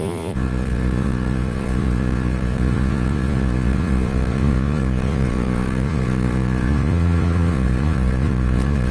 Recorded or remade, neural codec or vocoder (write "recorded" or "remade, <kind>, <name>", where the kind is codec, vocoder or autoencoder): remade, vocoder, Vocos